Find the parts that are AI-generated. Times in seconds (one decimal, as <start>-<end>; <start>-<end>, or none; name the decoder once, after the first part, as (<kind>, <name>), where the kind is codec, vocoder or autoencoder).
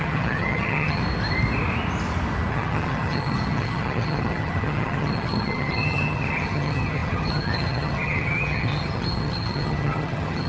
0.0-1.0 (vocoder, HiFi-GAN); 2.5-10.5